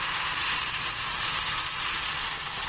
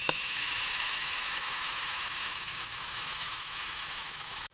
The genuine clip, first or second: first